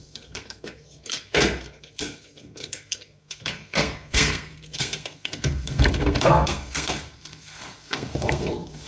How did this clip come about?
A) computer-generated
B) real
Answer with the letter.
A